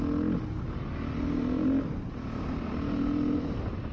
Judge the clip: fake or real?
real